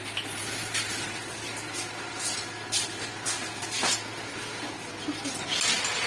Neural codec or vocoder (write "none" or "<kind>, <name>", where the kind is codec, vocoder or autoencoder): none